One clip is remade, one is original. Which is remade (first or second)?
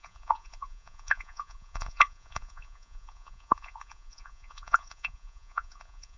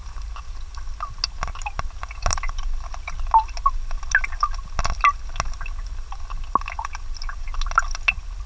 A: first